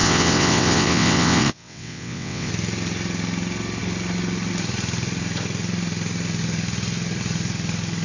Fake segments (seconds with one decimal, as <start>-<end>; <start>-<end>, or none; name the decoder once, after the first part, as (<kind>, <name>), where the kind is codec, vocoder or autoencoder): 0.0-2.5 (vocoder, WaveNeXt)